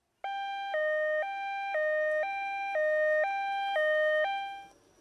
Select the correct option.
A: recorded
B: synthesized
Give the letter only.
A